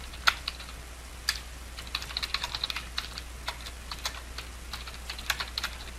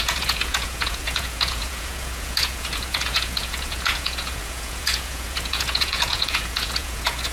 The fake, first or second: second